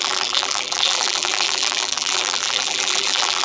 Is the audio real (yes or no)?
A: no